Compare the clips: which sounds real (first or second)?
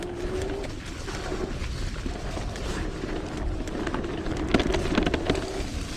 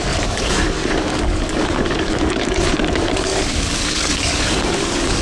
first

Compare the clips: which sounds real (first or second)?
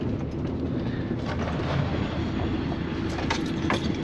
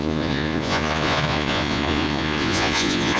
first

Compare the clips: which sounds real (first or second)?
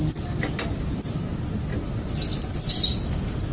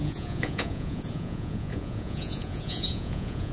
first